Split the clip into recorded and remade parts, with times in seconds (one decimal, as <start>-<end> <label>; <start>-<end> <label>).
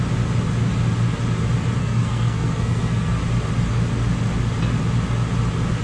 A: 0.0-1.8 recorded; 1.8-3.2 remade; 3.2-5.8 recorded